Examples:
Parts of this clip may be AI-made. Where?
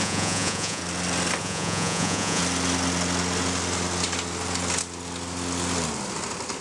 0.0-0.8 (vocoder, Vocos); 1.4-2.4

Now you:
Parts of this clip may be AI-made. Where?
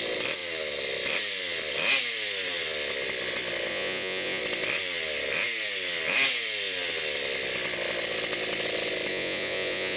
3.7-4.4 (vocoder, Vocos); 9.1-10.0